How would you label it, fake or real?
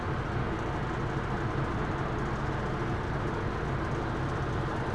real